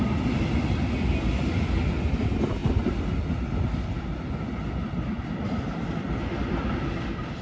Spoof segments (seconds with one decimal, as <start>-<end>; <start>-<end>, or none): none